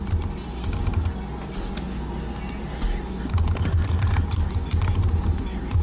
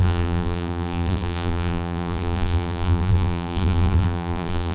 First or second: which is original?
first